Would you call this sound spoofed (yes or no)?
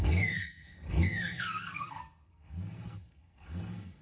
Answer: yes